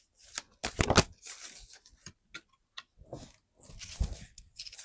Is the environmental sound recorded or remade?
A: recorded